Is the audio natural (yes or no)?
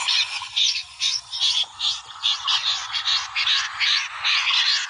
no